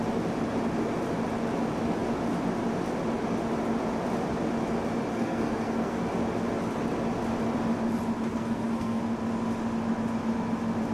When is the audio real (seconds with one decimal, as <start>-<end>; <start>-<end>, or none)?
0.0-5.1; 6.0-8.3; 9.0-10.9